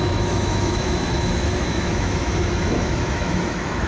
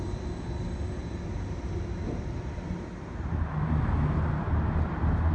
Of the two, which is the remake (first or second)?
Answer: first